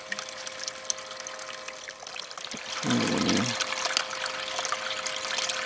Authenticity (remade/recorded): recorded